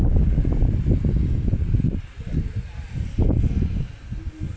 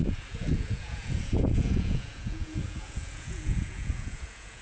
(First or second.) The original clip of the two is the first